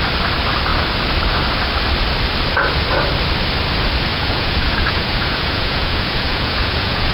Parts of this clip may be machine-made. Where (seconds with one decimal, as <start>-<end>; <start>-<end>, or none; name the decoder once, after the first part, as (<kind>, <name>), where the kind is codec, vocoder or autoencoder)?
4.1-7.1 (vocoder, Vocos)